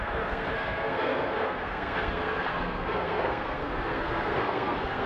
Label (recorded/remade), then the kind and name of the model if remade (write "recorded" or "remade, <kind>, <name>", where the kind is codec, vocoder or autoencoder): remade, codec, SNAC